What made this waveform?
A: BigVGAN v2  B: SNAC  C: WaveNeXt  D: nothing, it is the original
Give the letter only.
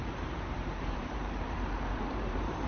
A